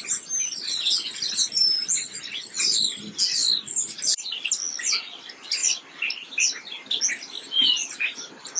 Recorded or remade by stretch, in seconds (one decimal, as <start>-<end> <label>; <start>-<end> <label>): 0.0-8.6 recorded